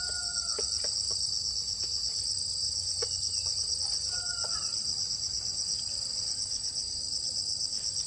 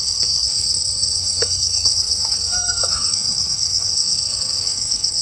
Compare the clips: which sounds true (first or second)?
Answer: first